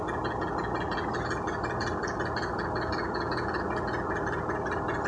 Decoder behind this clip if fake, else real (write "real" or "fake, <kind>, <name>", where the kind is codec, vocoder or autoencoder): real